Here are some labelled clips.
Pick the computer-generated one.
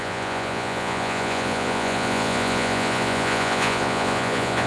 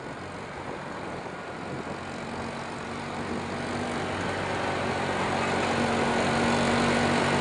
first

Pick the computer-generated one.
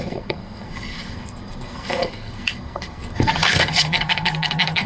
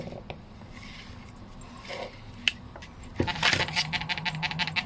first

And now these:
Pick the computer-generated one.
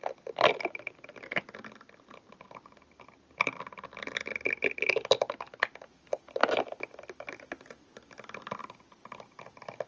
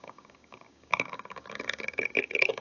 second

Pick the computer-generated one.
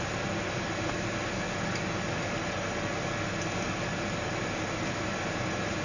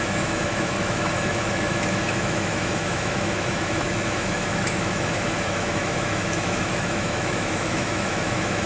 second